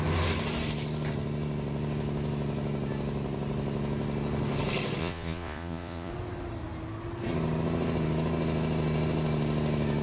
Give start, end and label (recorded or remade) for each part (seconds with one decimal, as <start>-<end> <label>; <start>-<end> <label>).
0.0-5.0 recorded; 5.0-6.1 remade; 6.1-10.0 recorded